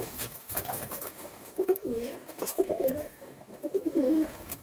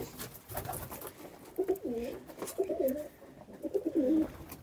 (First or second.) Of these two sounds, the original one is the second